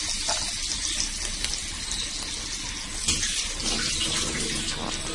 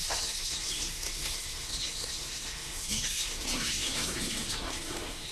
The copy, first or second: second